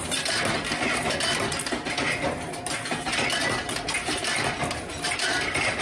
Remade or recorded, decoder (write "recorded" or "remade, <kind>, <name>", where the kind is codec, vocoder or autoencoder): recorded